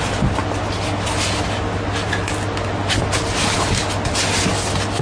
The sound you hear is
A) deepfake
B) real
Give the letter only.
B